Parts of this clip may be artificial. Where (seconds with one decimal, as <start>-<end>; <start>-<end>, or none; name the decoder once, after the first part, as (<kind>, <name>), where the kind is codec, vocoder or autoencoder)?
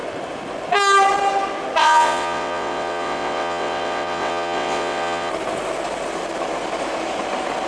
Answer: 1.8-5.3 (vocoder, WaveNeXt)